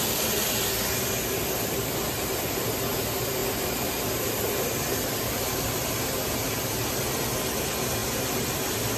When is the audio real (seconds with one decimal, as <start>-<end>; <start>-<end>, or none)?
0.0-3.4; 6.0-9.0